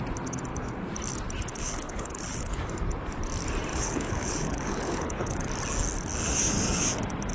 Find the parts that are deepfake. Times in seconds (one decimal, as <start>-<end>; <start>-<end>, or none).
1.5-2.6; 3.7-5.5